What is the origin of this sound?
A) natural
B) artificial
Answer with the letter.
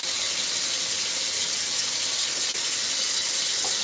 A